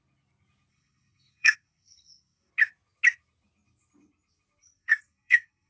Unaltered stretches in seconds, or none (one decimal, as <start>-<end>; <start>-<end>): 0.0-0.7; 2.5-4.6